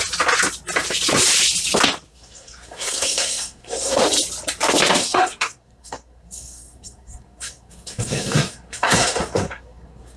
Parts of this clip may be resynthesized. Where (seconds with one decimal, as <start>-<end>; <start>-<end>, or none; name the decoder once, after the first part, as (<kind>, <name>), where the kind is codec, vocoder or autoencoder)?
2.1-4.0 (codec, SNAC); 5.0-10.2

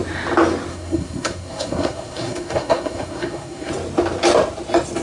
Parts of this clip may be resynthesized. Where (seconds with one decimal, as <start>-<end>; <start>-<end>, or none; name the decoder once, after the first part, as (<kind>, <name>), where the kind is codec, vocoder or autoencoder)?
0.7-3.7 (codec, SNAC)

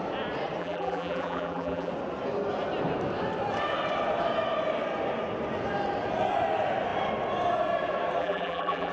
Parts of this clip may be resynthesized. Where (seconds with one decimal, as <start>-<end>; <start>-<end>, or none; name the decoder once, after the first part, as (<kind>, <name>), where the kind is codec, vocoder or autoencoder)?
0.6-1.9 (vocoder, BigVGAN v2); 8.2-8.9

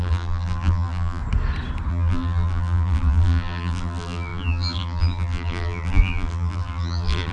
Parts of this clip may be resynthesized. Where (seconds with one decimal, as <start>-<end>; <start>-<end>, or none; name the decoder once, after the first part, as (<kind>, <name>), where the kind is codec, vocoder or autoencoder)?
0.0-1.2 (vocoder, BigVGAN v2); 1.9-7.3

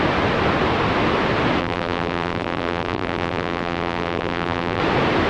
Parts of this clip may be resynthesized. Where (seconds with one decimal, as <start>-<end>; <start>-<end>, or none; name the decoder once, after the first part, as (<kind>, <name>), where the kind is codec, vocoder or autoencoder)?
1.6-4.8 (vocoder, BigVGAN v2)